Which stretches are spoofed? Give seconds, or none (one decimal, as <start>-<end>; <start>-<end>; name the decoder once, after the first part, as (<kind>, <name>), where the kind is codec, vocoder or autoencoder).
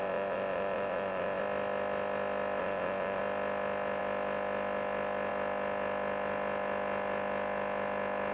0.0-1.4 (vocoder, Vocos); 2.6-3.2